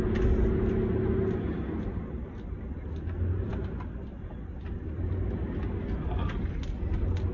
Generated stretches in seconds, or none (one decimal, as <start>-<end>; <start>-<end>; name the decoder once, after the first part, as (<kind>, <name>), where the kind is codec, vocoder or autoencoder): none